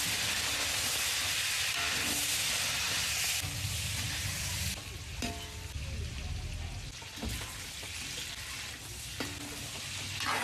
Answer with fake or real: real